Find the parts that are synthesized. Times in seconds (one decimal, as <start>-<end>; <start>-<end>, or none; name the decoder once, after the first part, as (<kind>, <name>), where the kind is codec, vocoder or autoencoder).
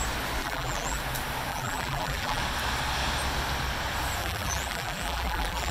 0.4-1.0 (vocoder, BigVGAN v2); 1.5-2.4; 4.2-5.7